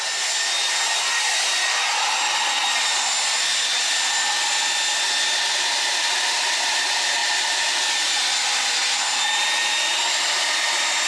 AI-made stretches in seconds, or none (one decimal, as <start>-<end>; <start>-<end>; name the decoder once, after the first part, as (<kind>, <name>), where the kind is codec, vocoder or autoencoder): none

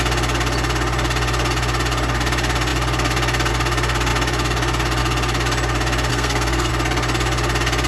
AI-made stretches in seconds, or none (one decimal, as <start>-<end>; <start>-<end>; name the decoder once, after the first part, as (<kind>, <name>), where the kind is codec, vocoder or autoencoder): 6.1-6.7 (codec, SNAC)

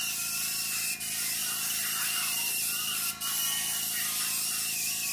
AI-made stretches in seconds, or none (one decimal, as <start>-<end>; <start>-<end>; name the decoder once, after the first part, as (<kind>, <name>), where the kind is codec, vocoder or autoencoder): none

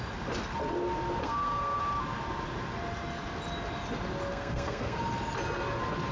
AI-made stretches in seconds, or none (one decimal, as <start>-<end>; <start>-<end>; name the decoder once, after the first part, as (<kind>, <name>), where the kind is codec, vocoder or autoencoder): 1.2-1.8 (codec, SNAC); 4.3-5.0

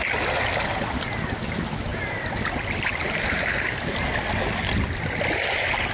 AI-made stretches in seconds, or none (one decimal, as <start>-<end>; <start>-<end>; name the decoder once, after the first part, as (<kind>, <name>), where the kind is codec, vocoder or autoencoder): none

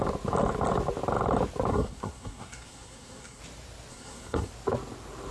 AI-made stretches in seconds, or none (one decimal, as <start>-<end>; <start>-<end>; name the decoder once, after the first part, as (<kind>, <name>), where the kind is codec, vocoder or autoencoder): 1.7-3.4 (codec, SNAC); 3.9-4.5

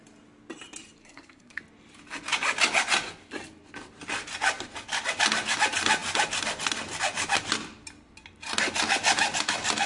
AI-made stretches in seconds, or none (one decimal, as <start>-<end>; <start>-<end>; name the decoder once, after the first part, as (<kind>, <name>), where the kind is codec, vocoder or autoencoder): 1.0-1.6 (codec, SNAC)